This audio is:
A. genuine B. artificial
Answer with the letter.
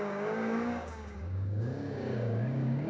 B